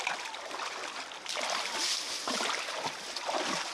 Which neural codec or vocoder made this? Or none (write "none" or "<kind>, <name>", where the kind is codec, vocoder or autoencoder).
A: none